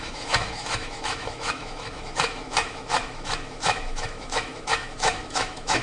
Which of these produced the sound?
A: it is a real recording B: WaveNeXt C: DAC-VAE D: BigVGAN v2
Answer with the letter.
C